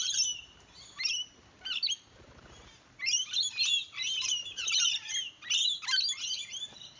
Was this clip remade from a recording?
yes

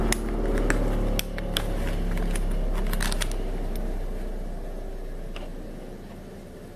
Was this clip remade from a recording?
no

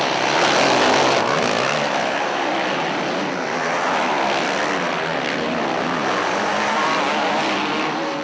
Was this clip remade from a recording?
no